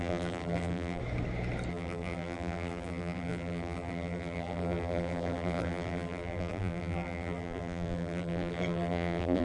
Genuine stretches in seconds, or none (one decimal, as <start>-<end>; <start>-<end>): 1.0-1.7